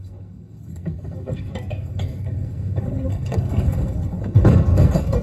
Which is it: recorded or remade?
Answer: remade